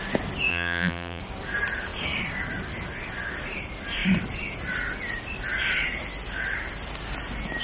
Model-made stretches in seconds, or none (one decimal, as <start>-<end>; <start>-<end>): 0.5-1.2